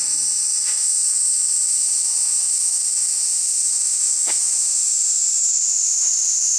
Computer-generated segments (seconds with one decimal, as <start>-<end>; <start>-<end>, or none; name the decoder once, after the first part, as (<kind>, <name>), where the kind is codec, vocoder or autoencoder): 0.0-6.6 (autoencoder, DAC-VAE)